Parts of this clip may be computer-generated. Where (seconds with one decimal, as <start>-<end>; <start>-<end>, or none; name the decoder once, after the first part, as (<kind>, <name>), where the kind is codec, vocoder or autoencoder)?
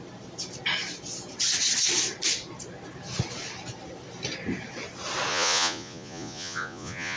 5.3-7.2 (vocoder, Vocos)